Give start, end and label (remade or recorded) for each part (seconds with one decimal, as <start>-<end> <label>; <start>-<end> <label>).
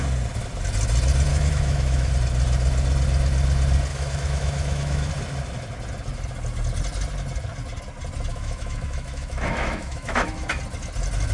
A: 0.0-1.3 recorded; 1.3-2.1 remade; 2.1-3.9 recorded; 3.9-5.1 remade; 5.1-8.3 recorded; 8.3-10.6 remade; 10.6-11.3 recorded